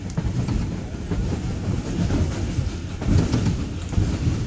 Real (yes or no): yes